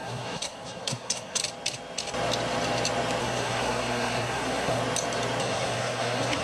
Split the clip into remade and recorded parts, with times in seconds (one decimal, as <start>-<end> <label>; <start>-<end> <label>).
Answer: 0.0-1.4 remade; 1.4-3.2 recorded; 3.2-4.8 remade; 4.8-5.4 recorded; 5.4-6.4 remade